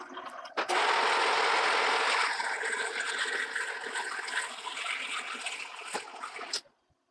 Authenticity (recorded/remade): recorded